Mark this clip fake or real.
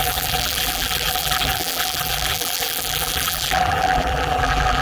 fake